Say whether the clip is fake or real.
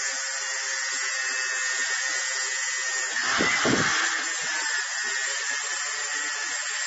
real